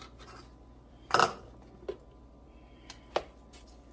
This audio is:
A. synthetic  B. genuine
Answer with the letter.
B